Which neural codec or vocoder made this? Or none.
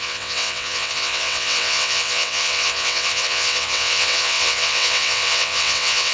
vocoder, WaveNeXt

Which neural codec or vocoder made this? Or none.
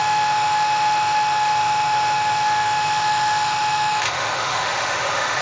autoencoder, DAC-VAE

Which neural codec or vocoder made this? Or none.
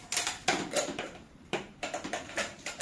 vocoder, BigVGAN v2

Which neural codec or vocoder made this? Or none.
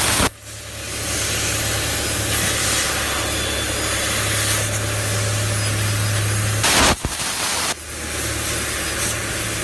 none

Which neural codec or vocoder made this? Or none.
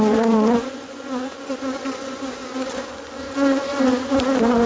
vocoder, Vocos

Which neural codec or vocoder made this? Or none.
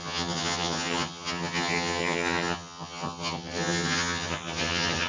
vocoder, HiFi-GAN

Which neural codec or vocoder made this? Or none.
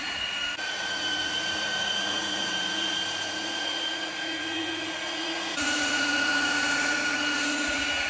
vocoder, Vocos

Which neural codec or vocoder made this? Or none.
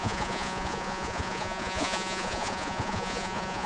vocoder, Vocos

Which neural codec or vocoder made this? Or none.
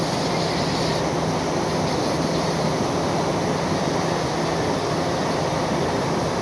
none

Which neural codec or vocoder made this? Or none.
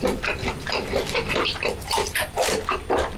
vocoder, BigVGAN v2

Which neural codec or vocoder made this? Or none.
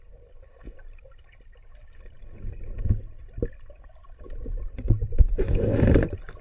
none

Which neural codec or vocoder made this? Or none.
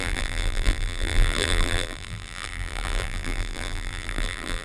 vocoder, BigVGAN v2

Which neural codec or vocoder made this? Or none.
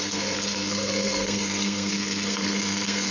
codec, SNAC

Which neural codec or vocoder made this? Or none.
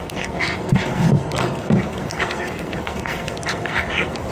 codec, SNAC